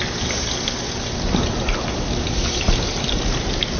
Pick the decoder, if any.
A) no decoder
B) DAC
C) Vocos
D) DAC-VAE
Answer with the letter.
A